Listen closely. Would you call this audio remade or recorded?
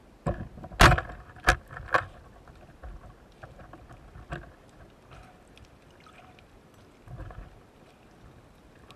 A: recorded